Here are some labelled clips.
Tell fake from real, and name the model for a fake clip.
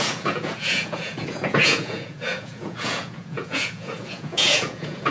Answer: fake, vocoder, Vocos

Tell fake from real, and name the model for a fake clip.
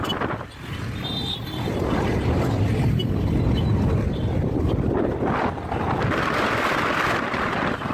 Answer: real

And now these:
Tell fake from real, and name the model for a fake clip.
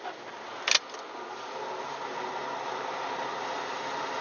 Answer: real